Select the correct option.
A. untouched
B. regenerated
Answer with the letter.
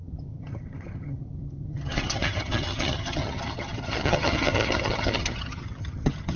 B